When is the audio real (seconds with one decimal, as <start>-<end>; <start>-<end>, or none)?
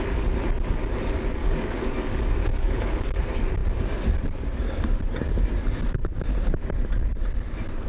0.0-1.4; 3.2-7.9